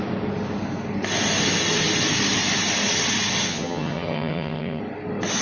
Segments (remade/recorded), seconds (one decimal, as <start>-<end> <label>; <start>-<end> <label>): 0.0-3.5 recorded; 3.5-4.8 remade; 4.8-5.4 recorded